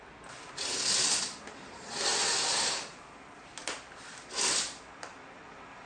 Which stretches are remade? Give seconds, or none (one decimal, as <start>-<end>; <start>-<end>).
none